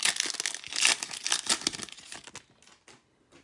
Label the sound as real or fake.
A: real